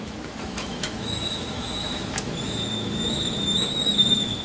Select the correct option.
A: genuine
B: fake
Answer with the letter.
B